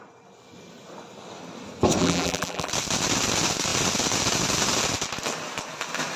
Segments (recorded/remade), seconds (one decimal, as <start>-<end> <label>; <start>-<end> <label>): 0.0-2.0 recorded; 2.0-2.7 remade; 2.7-6.2 recorded